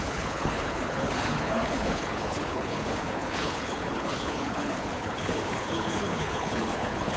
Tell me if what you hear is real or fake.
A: fake